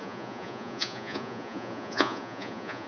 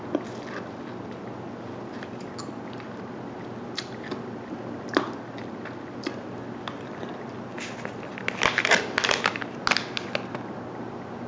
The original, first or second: second